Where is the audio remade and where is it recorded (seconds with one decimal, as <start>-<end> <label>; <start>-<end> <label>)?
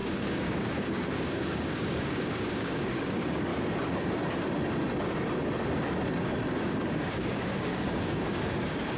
0.0-3.5 remade; 3.5-6.6 recorded; 6.6-9.0 remade